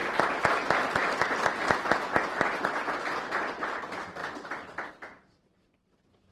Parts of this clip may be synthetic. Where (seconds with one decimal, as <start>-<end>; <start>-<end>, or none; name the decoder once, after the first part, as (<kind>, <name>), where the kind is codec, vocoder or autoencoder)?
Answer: none